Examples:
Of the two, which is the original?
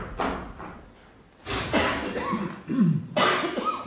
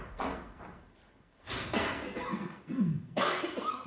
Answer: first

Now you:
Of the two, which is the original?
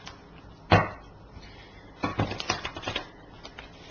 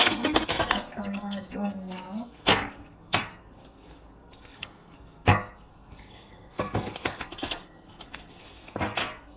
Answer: first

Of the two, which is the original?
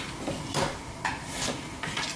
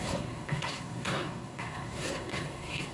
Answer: first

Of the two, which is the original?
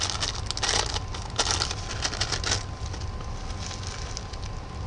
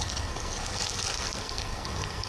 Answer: first